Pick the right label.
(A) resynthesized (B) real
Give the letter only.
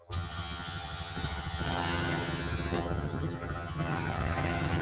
A